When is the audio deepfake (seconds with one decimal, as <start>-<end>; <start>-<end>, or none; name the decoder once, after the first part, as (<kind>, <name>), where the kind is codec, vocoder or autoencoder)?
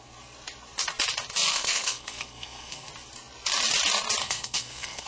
1.5-2.9 (codec, SNAC); 4.2-5.1